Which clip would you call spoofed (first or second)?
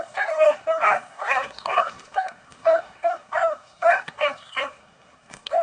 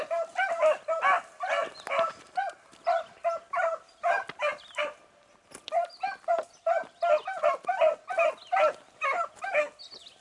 first